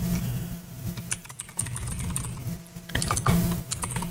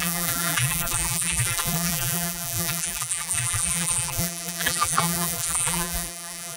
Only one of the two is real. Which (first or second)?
first